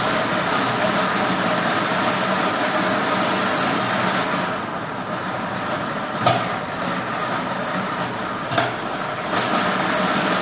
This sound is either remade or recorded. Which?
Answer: recorded